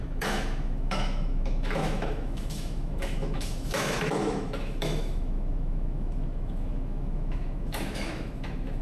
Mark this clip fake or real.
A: fake